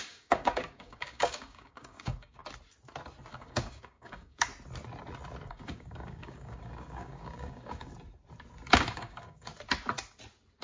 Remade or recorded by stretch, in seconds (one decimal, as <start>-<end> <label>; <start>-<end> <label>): 0.0-2.4 remade; 2.4-3.3 recorded; 3.3-4.5 remade; 4.5-5.5 recorded; 5.5-7.9 remade; 7.9-8.7 recorded; 8.7-9.5 remade; 9.5-10.6 recorded